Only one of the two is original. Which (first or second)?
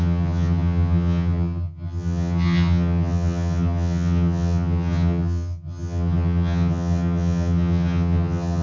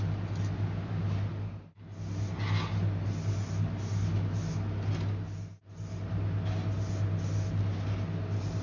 second